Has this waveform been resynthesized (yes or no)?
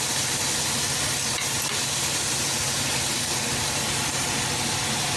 no